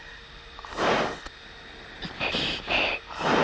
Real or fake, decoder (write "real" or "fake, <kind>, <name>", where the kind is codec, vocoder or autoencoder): real